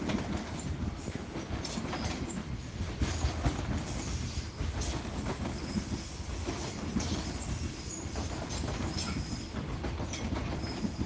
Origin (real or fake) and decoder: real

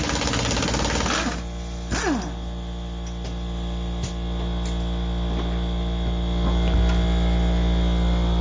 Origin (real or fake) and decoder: real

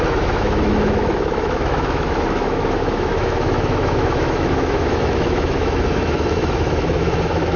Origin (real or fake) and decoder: fake, autoencoder, DAC-VAE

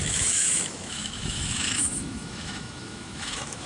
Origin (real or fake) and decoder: fake, autoencoder, DAC-VAE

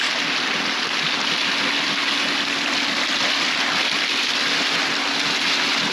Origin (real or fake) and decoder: real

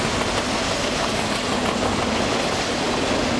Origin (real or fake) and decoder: real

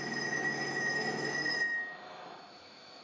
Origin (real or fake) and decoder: fake, autoencoder, DAC-VAE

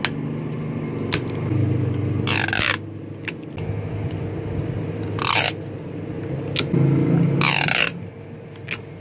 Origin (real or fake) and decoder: real